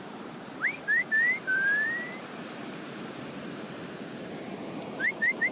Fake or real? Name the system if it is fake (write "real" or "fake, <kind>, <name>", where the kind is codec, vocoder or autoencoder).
fake, vocoder, BigVGAN v2